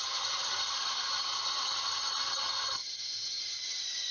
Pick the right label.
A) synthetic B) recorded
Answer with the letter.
A